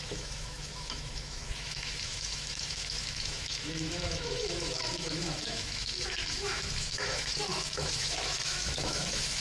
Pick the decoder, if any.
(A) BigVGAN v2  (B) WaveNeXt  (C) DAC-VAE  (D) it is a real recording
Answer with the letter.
C